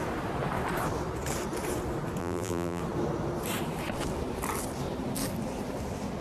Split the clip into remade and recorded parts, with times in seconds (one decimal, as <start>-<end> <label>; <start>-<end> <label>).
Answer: 0.0-2.2 recorded; 2.2-2.8 remade; 2.8-6.2 recorded